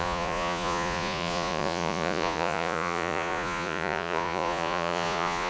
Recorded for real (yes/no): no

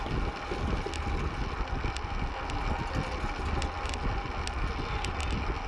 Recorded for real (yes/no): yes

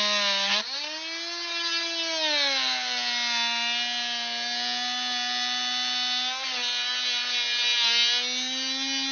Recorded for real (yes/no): yes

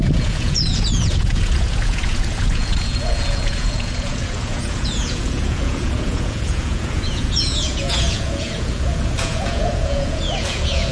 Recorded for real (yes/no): no